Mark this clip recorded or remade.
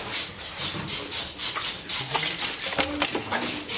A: recorded